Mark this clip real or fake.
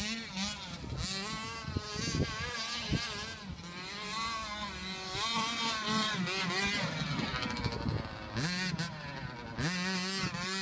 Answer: real